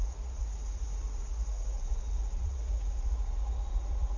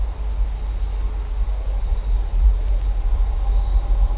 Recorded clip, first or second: second